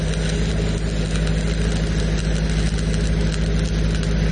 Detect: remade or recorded recorded